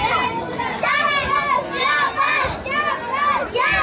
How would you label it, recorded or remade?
recorded